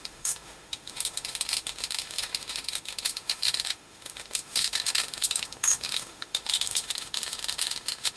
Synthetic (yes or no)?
yes